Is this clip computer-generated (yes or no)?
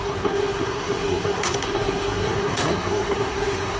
yes